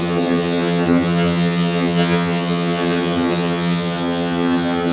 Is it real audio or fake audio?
fake